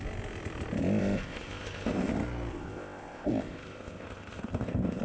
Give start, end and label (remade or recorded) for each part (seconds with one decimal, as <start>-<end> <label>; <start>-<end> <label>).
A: 0.0-1.0 recorded; 1.0-2.1 remade; 2.1-2.5 recorded; 2.5-5.0 remade